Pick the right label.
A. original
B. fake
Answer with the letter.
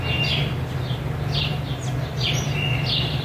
A